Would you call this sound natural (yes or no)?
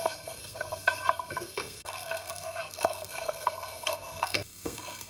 no